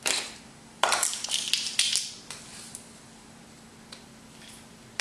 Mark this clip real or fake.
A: real